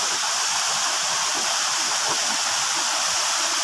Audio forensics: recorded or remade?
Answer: recorded